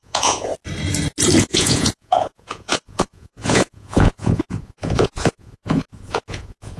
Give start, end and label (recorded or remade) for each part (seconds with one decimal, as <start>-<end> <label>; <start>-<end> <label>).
0.0-0.5 remade; 0.5-1.4 recorded; 1.4-6.8 remade